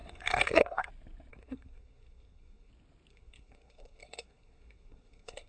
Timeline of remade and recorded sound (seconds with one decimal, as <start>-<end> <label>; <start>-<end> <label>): 0.0-0.9 remade; 0.9-1.3 recorded; 1.3-2.7 remade; 2.7-3.1 recorded; 3.1-5.5 remade